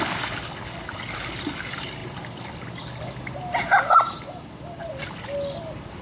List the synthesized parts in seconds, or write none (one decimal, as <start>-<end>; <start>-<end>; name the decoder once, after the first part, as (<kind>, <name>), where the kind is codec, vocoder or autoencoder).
none